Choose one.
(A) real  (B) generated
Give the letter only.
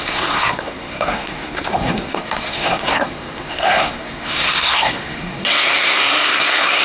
B